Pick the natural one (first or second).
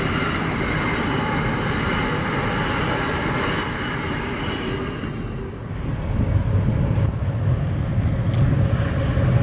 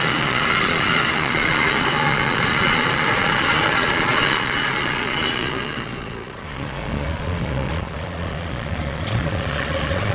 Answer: first